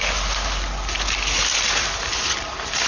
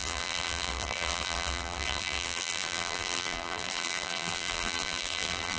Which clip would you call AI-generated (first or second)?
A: second